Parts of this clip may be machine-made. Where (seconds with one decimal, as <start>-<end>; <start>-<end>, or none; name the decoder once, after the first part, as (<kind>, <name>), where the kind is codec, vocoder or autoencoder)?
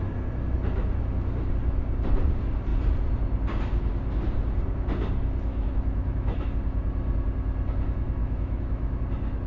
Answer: 5.5-6.5 (autoencoder, DAC-VAE); 8.2-9.0